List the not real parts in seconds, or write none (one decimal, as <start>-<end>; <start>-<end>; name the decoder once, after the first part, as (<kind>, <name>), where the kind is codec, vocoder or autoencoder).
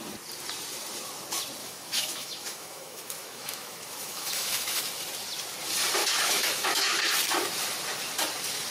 1.6-4.8 (autoencoder, DAC-VAE); 6.0-7.0